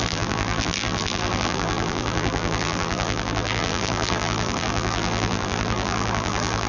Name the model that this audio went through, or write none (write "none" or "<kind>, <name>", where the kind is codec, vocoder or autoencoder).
vocoder, BigVGAN v2